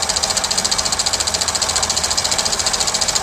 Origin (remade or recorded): recorded